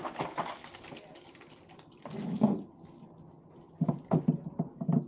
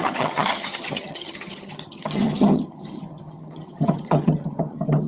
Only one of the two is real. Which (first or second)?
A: first